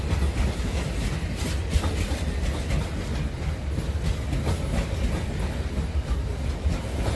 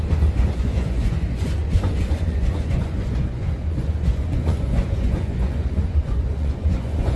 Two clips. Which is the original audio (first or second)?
first